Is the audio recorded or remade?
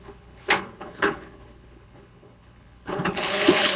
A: remade